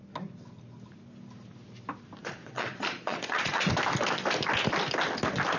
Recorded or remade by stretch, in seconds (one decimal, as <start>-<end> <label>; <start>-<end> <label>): 0.0-2.4 recorded; 2.4-3.7 remade; 3.7-5.6 recorded